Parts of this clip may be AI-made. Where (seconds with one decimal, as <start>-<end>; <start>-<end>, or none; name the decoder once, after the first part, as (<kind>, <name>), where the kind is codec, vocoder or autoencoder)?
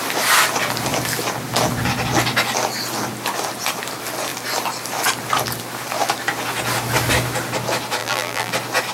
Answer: 8.0-8.5 (vocoder, BigVGAN v2)